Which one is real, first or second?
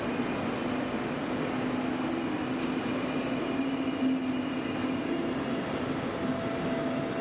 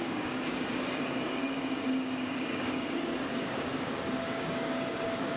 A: first